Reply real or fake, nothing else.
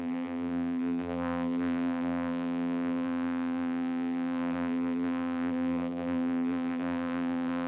fake